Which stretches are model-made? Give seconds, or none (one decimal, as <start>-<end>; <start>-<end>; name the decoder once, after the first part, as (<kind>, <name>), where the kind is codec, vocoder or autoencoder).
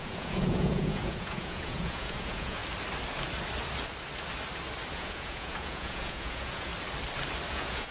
0.0-2.6 (vocoder, Vocos); 4.9-6.7; 7.5-7.9